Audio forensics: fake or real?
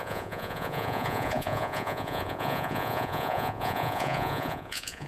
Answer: fake